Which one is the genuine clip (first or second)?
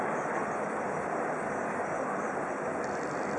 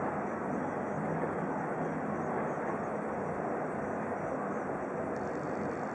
second